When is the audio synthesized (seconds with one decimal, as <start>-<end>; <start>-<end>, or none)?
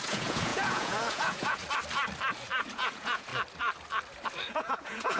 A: 0.0-1.6; 2.6-3.3; 4.5-5.2